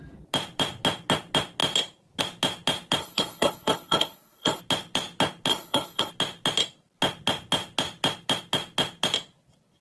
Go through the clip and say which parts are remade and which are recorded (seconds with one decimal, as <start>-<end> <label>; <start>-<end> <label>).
0.0-3.0 recorded; 3.0-4.6 remade; 4.6-5.5 recorded; 5.5-6.1 remade; 6.1-9.8 recorded